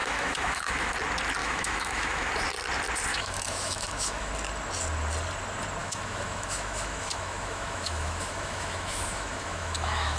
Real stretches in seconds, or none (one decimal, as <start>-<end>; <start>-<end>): 0.9-1.4; 2.3-3.1; 4.3-5.8